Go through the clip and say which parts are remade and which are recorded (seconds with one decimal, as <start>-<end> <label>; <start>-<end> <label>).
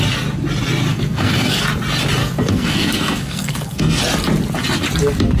0.0-0.9 recorded; 0.9-1.6 remade; 1.6-2.2 recorded; 2.2-4.0 remade; 4.0-5.4 recorded